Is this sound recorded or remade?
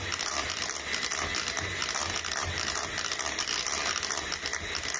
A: recorded